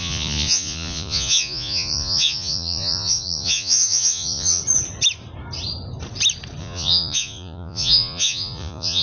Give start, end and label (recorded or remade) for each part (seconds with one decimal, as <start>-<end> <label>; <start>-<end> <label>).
0.0-4.6 remade; 4.6-6.6 recorded; 6.6-9.0 remade